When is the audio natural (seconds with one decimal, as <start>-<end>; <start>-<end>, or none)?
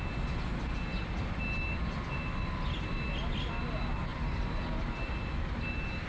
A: 0.0-0.9; 3.4-4.1; 5.1-6.1